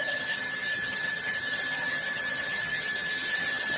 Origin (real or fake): fake